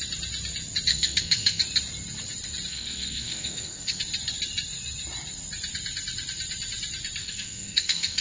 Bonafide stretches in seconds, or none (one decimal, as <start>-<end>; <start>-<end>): 0.0-0.9; 1.6-2.7; 4.0-7.2